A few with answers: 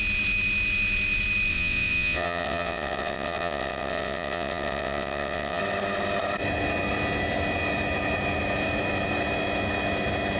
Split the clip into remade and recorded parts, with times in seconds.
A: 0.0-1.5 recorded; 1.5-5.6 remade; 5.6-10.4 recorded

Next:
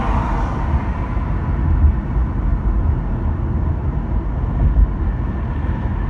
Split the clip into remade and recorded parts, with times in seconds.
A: 0.0-6.1 recorded

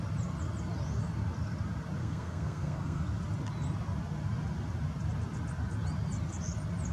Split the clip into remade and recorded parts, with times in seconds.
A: 0.0-2.0 recorded; 2.0-3.0 remade; 3.0-6.9 recorded

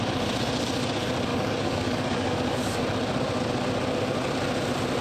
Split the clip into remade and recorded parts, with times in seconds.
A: 0.0-1.3 recorded; 1.3-2.8 remade; 2.8-5.0 recorded

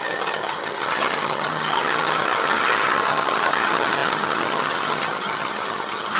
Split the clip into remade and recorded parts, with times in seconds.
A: 0.0-6.2 remade

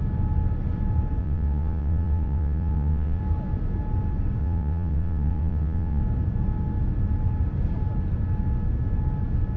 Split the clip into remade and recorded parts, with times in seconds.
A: 0.0-1.2 recorded; 1.2-3.2 remade; 3.2-4.4 recorded; 4.4-6.0 remade; 6.0-9.6 recorded

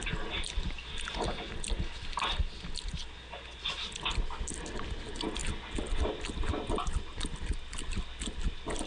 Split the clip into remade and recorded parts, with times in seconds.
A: 0.0-8.9 recorded